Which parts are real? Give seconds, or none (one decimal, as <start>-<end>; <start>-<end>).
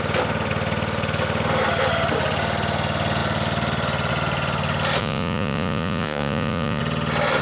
0.0-5.0; 6.8-7.4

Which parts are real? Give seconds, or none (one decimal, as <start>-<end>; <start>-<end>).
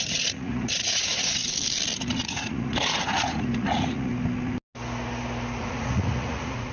1.4-2.0; 4.1-5.6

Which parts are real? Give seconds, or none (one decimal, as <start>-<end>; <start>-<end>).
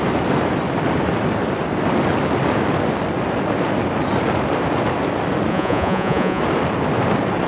0.0-5.5; 6.4-7.5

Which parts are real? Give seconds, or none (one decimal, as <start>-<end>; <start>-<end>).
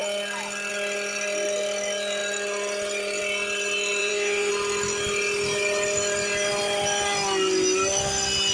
0.0-4.0; 4.5-8.5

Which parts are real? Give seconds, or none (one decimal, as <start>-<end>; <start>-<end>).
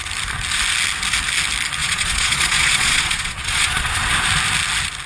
0.0-1.8; 4.0-5.1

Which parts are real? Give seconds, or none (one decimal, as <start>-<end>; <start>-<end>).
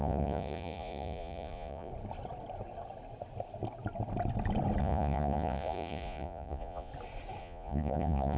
1.9-4.8; 6.9-7.4